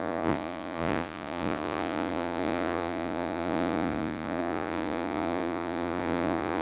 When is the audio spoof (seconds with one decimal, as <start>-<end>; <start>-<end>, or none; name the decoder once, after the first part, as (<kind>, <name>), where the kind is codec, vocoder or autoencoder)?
0.0-6.6 (vocoder, Vocos)